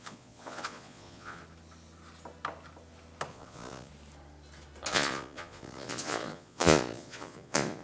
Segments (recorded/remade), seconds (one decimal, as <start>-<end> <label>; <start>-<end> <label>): 0.0-1.4 remade; 1.4-3.3 recorded; 3.3-3.9 remade; 3.9-4.9 recorded; 4.9-7.8 remade